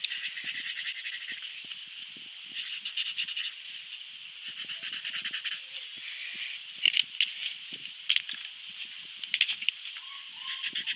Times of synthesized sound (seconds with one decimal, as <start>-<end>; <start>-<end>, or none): none